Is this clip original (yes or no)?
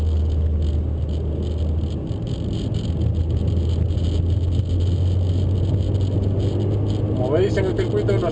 yes